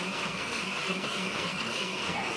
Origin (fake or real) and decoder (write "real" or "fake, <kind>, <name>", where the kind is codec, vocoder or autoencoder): fake, codec, SNAC